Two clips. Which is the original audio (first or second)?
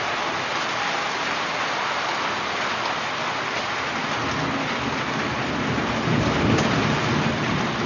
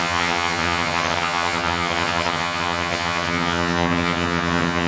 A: first